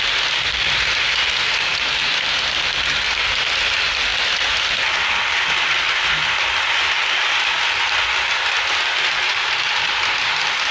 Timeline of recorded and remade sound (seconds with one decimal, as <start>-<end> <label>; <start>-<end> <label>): 0.0-10.7 recorded